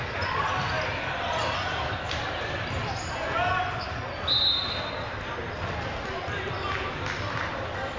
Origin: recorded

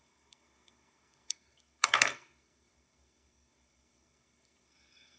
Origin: remade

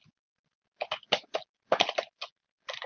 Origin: recorded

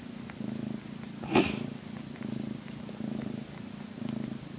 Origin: recorded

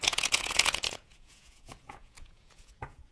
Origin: remade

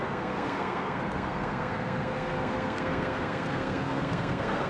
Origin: remade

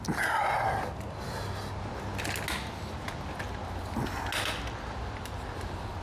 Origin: recorded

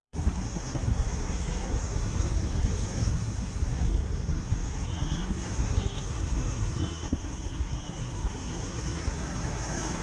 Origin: remade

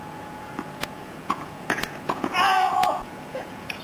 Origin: remade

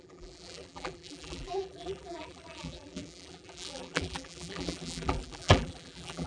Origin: remade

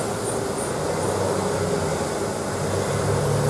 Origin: recorded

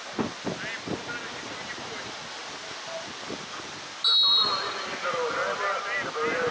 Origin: recorded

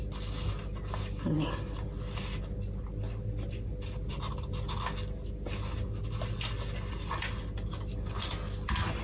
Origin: recorded